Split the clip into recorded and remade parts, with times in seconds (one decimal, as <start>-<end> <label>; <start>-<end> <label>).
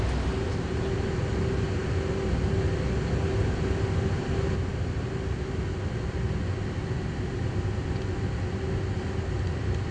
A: 0.0-9.9 recorded